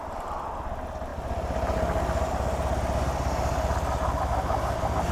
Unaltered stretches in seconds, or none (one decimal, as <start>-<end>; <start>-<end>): 0.0-5.1